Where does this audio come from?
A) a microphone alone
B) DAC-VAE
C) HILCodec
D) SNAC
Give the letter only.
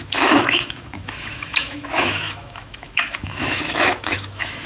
B